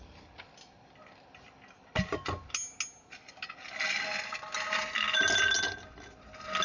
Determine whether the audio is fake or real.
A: real